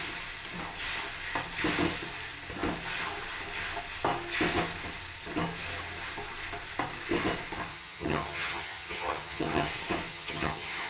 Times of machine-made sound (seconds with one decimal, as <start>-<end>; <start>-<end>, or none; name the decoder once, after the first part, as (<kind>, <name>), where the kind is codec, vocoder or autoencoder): 7.7-9.7 (vocoder, HiFi-GAN); 10.1-10.9